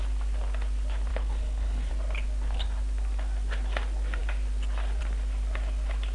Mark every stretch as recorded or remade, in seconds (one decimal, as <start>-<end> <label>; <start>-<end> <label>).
0.0-1.1 recorded; 1.1-1.9 remade; 1.9-6.1 recorded